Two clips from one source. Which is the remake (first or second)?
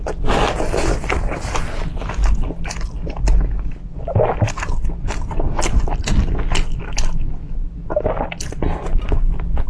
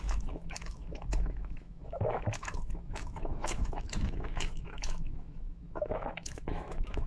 second